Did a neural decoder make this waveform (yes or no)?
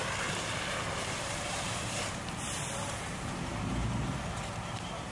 yes